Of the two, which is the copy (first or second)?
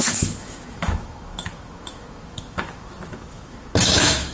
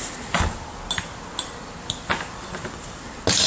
first